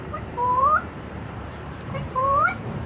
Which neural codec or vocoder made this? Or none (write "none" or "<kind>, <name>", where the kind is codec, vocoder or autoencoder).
vocoder, BigVGAN v2